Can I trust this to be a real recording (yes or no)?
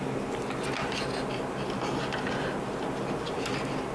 yes